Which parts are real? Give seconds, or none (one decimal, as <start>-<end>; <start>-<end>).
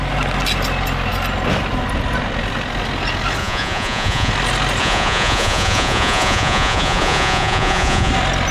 0.0-3.4; 4.3-4.8; 8.1-8.5